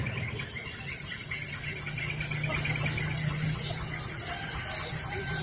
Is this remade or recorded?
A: recorded